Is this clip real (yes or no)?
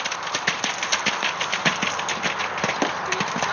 yes